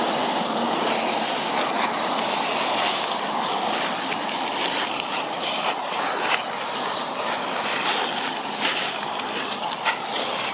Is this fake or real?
real